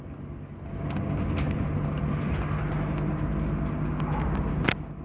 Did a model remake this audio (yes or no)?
no